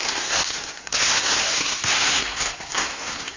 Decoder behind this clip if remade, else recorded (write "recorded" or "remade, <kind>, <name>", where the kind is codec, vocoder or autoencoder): remade, codec, SNAC